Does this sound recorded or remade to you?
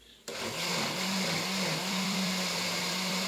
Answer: remade